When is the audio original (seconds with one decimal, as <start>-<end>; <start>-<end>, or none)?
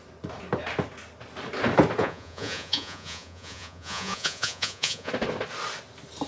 0.0-2.0; 5.1-6.3